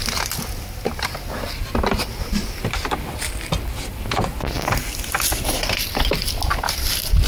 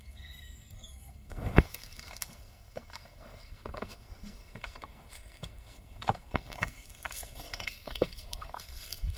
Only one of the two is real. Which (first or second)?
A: first